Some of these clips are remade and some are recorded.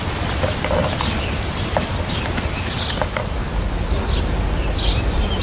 recorded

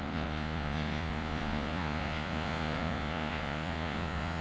remade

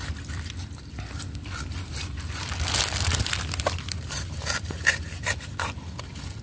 recorded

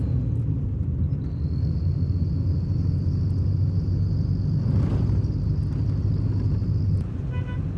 recorded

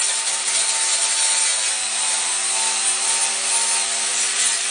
recorded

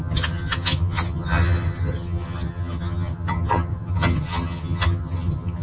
remade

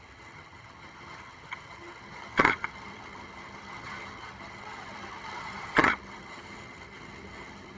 remade